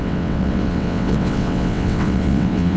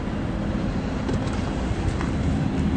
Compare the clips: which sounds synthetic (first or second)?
first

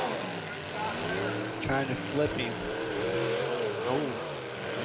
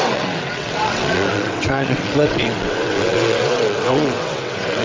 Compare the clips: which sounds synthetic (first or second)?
second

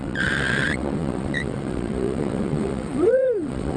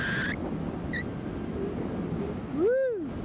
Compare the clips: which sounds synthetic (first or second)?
first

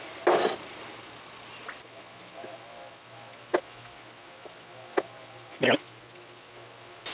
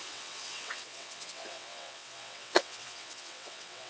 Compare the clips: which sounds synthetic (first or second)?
second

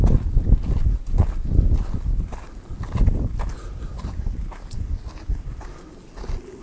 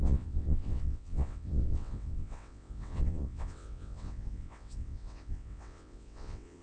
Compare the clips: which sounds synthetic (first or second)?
second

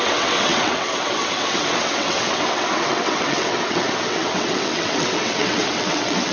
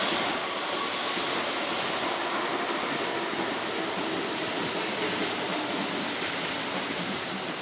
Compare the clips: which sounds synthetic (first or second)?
first